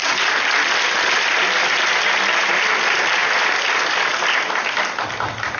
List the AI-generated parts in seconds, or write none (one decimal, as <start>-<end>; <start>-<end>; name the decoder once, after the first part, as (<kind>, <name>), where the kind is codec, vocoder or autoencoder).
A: none